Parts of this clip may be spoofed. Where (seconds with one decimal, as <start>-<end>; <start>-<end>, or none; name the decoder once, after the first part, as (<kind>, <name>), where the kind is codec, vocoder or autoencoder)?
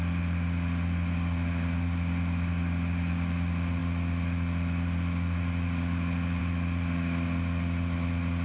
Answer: none